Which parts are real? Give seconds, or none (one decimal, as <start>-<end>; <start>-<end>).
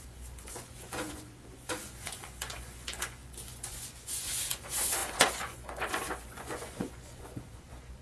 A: none